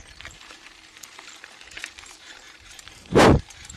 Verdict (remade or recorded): remade